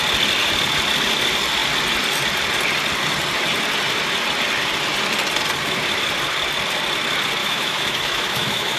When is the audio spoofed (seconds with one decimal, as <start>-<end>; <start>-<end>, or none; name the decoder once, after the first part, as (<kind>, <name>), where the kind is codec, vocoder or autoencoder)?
7.4-8.8 (autoencoder, DAC-VAE)